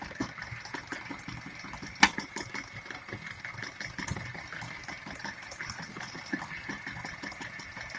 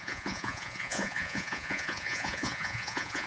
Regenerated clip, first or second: second